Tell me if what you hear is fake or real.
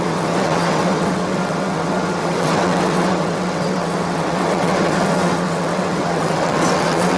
fake